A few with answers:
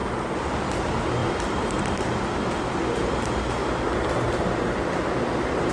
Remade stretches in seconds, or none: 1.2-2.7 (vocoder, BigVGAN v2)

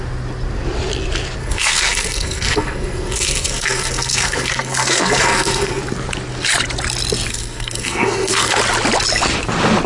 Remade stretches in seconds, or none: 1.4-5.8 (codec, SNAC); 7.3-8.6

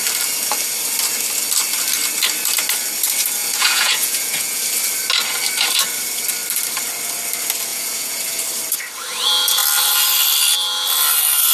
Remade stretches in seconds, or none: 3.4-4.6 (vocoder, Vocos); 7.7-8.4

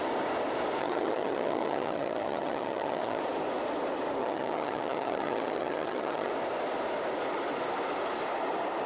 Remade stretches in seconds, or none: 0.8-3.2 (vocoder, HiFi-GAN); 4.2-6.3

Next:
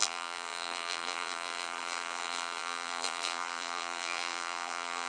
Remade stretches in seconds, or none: 0.0-5.1 (vocoder, BigVGAN v2)

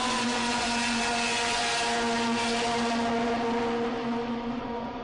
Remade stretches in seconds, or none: 0.0-1.6 (vocoder, Vocos); 4.6-5.0

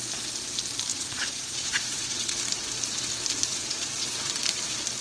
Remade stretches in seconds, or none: 0.9-2.4 (vocoder, Vocos); 3.5-4.3

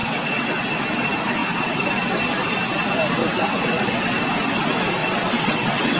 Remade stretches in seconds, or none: 0.0-0.6 (vocoder, WaveNeXt); 3.2-4.2; 5.0-6.0